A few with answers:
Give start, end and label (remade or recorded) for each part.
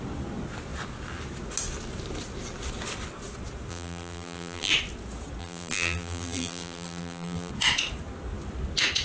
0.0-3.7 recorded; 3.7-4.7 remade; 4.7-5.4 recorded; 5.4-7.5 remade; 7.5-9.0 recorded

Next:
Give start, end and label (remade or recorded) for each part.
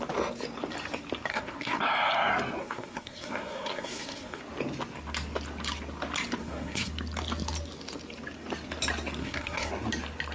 0.0-1.3 recorded; 1.3-1.8 remade; 1.8-2.6 recorded; 2.6-4.4 remade; 4.4-6.4 recorded; 6.4-6.9 remade; 6.9-9.2 recorded; 9.2-9.7 remade; 9.7-10.3 recorded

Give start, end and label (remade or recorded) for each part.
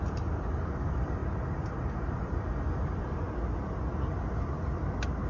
0.0-1.2 remade; 1.2-2.2 recorded; 2.2-3.0 remade; 3.0-5.3 recorded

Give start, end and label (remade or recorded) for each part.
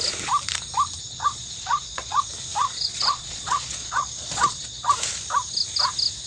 0.0-1.0 recorded; 1.0-2.2 remade; 2.2-2.6 recorded; 2.6-4.9 remade; 4.9-6.3 recorded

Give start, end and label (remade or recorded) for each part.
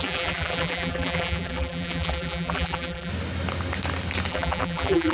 0.0-3.1 remade; 3.1-4.3 recorded; 4.3-5.1 remade